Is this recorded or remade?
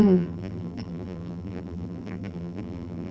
remade